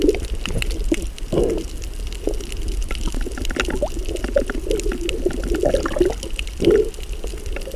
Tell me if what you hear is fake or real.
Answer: real